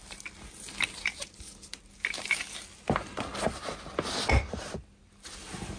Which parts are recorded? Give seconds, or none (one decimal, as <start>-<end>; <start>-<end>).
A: 0.0-5.8